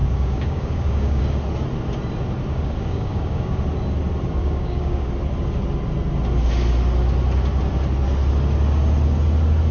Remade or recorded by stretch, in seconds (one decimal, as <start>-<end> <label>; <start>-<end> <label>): 0.0-1.2 remade; 1.2-2.5 recorded; 2.5-3.6 remade; 3.6-4.4 recorded; 4.4-5.1 remade; 5.1-9.7 recorded